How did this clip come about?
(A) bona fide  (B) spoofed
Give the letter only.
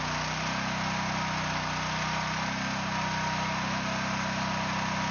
A